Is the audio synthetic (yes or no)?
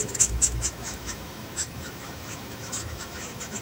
yes